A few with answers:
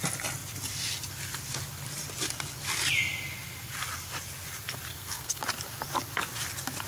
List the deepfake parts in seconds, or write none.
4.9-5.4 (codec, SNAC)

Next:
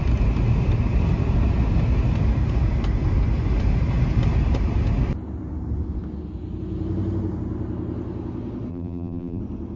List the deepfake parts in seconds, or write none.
8.7-9.4 (vocoder, BigVGAN v2)

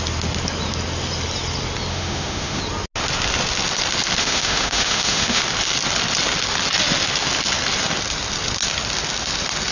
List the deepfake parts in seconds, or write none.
1.9-2.6 (autoencoder, DAC-VAE); 4.2-5.4

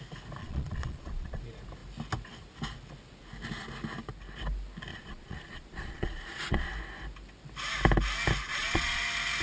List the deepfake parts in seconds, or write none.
0.4-1.4 (vocoder, Vocos); 4.9-6.7; 8.5-9.0

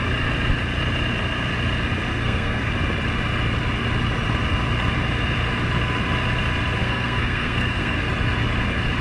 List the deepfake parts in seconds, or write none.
2.1-2.7 (codec, SNAC); 6.8-8.0

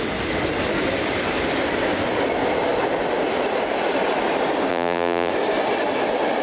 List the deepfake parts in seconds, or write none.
4.7-5.3 (vocoder, BigVGAN v2)

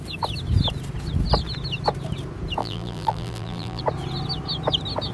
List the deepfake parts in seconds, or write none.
2.6-3.8 (vocoder, BigVGAN v2)

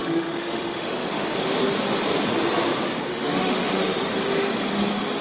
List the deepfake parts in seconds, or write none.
0.0-1.4 (autoencoder, DAC-VAE); 3.1-4.1